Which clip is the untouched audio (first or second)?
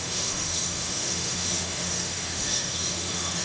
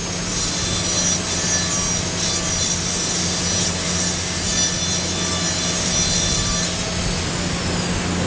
second